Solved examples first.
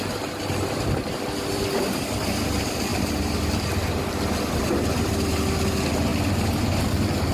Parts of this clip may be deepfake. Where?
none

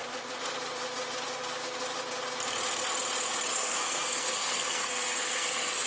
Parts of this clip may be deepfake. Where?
3.5-5.9 (codec, SNAC)

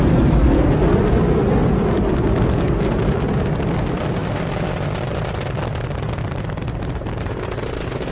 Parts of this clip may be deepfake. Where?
none

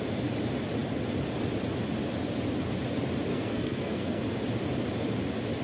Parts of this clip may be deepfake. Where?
3.3-4.2 (codec, SNAC)

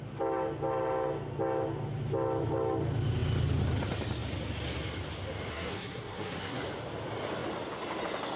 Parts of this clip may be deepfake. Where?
5.5-6.6 (codec, SNAC)

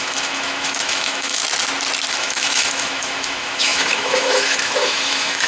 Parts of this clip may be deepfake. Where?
0.0-1.4 (autoencoder, DAC-VAE); 2.1-5.5

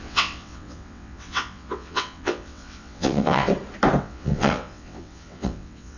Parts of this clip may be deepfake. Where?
0.0-3.5 (vocoder, WaveNeXt); 4.0-6.0

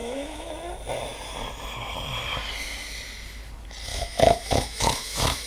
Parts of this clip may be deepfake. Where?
0.0-0.5 (autoencoder, DAC-VAE); 3.9-5.5